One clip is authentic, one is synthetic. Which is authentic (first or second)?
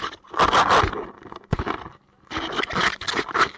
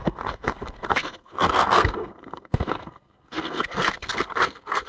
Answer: first